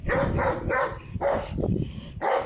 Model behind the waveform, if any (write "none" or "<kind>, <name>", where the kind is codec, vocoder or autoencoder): vocoder, BigVGAN v2